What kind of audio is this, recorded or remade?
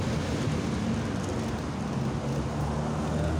recorded